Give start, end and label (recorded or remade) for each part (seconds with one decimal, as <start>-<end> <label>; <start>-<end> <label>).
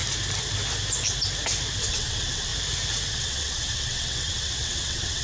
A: 0.0-1.8 recorded; 1.8-2.5 remade; 2.5-3.1 recorded; 3.1-5.2 remade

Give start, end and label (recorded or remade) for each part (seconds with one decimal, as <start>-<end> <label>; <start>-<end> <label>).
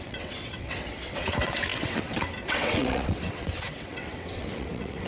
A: 0.0-5.1 remade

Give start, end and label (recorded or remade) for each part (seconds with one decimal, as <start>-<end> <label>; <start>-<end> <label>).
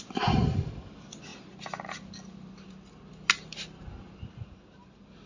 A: 0.0-5.3 recorded